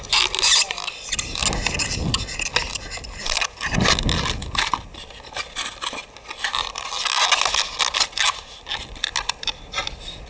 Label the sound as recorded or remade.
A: recorded